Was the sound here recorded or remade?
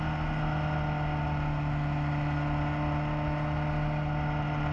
recorded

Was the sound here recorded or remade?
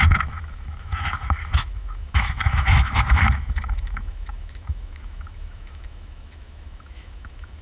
remade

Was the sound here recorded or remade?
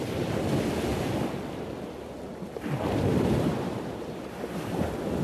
recorded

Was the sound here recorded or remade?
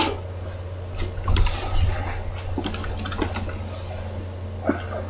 recorded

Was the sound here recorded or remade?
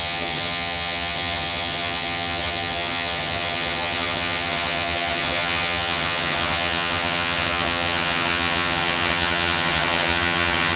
remade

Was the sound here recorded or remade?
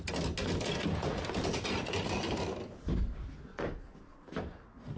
recorded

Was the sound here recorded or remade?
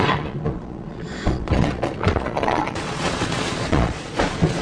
remade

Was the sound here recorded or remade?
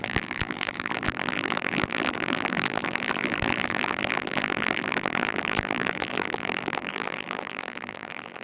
remade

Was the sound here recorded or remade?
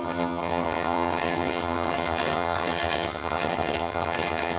remade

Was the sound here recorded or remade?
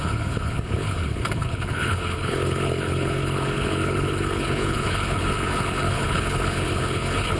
remade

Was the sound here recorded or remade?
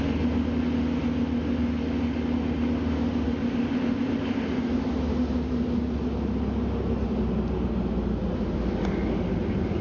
recorded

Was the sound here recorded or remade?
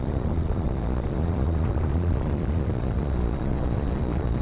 remade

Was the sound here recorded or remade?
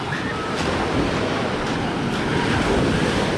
recorded